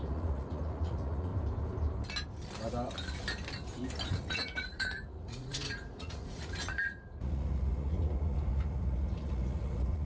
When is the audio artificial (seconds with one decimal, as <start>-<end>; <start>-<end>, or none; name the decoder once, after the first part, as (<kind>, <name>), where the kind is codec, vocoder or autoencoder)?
0.0-1.3 (vocoder, Vocos); 4.1-10.1